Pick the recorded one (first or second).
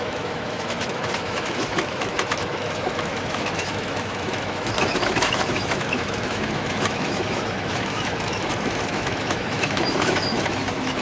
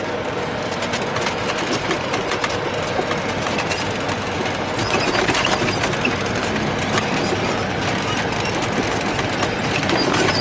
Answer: second